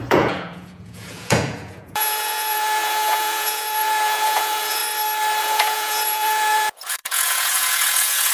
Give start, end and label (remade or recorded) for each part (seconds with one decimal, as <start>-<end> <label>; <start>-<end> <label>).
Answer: 0.0-4.8 remade; 4.8-5.4 recorded; 5.4-8.3 remade